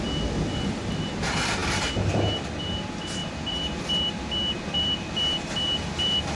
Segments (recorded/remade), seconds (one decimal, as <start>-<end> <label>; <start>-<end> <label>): 0.0-1.6 remade; 1.6-2.1 recorded; 2.1-6.3 remade